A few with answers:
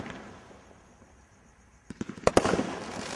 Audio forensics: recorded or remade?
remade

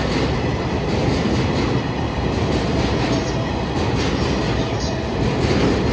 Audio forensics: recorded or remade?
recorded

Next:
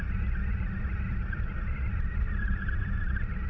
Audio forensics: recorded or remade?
recorded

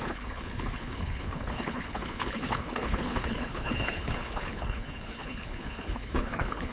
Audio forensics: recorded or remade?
remade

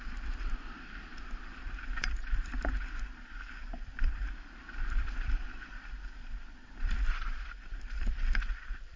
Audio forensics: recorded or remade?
remade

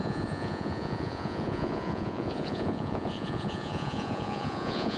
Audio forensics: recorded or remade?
remade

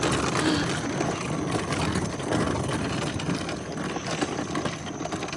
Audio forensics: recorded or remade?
recorded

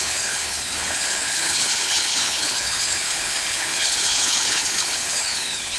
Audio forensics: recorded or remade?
remade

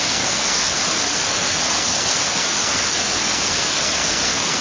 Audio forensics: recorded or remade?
remade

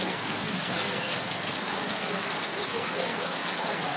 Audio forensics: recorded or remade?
remade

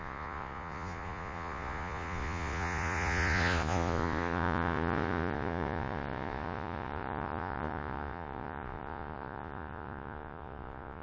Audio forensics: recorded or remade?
remade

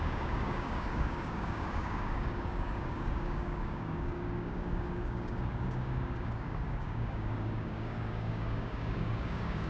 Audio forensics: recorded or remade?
remade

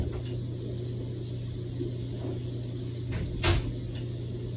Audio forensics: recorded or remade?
recorded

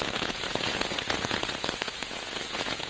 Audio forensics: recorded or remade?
remade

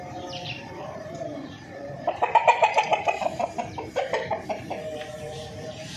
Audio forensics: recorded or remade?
remade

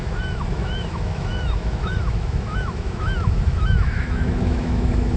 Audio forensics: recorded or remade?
remade